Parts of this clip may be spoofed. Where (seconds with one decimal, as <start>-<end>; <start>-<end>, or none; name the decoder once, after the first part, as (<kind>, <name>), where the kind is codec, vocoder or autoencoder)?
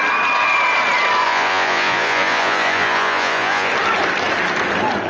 1.2-3.7 (vocoder, Vocos)